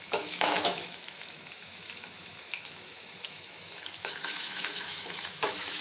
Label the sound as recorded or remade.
remade